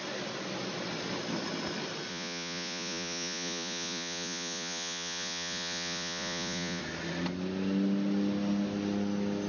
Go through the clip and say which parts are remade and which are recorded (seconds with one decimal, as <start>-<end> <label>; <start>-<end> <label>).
0.0-2.1 recorded; 2.1-6.8 remade; 6.8-9.5 recorded